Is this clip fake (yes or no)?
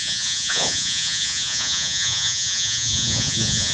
yes